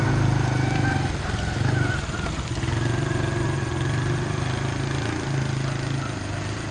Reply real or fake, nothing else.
real